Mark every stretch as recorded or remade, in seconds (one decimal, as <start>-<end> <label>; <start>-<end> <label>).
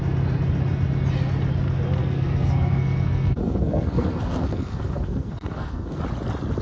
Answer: 0.0-2.0 recorded; 2.0-6.0 remade; 6.0-6.6 recorded